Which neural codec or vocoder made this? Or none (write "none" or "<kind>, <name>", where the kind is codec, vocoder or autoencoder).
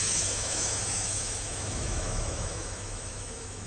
autoencoder, DAC-VAE